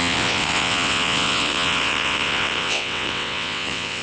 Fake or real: fake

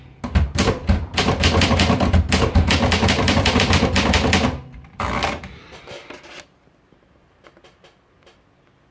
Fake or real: real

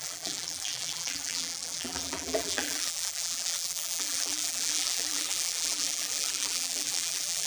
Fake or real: fake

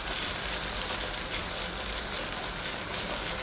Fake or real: real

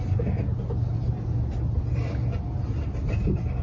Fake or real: real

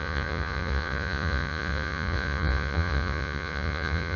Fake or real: fake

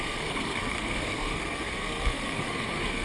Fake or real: fake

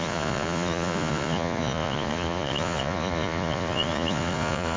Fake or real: fake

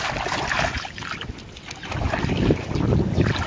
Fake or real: real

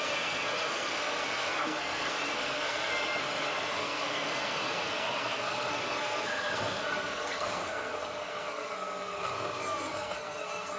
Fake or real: fake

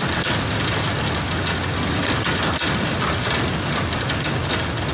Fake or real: real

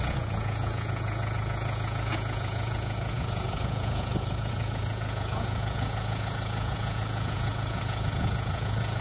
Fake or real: fake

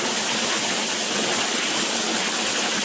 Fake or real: real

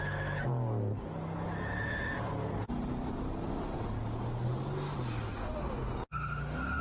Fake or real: real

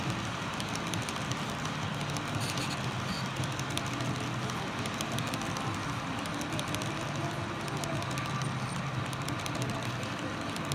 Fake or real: real